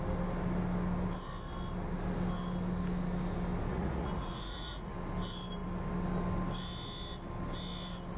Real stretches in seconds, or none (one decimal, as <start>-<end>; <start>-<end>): 0.0-3.7; 4.9-8.2